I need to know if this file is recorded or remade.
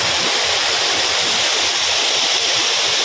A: recorded